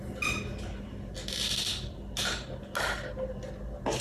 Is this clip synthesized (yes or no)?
no